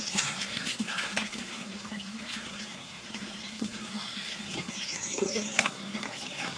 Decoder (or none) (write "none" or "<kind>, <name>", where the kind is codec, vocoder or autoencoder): codec, SNAC